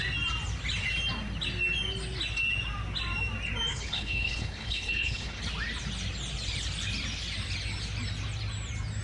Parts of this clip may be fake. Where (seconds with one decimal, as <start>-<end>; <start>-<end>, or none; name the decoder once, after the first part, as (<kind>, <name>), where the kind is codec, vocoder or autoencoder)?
3.7-5.4 (codec, HILCodec)